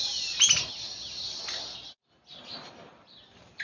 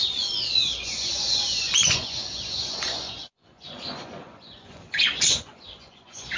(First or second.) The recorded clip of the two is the first